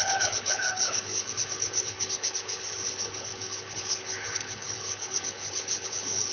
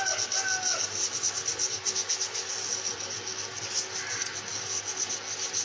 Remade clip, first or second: first